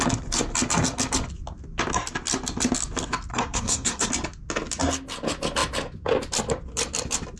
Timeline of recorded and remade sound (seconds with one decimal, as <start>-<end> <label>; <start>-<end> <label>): 0.0-3.3 recorded; 3.3-4.1 remade; 4.1-7.4 recorded